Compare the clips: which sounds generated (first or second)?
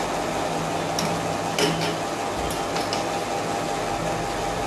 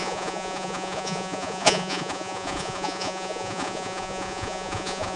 second